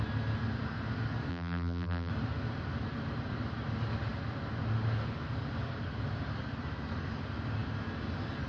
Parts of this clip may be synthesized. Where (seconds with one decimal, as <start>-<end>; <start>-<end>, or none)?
1.3-2.1